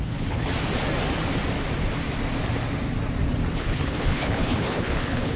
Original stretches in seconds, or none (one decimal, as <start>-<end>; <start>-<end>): 0.5-3.5